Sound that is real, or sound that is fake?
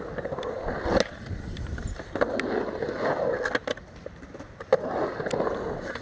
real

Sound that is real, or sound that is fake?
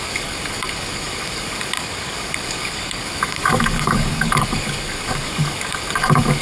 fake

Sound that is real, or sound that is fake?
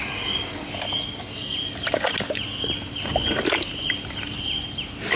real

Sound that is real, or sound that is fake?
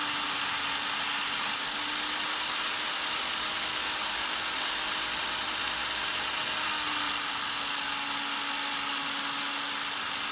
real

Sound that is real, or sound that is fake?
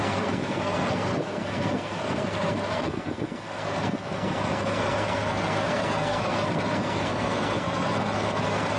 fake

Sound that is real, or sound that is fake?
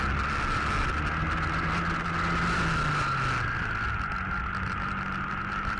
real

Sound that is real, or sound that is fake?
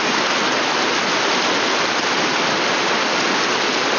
real